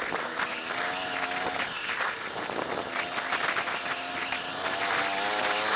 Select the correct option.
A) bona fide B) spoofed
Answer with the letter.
A